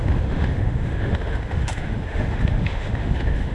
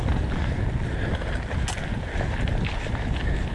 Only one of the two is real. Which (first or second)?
second